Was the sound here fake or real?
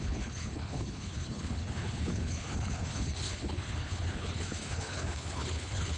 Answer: fake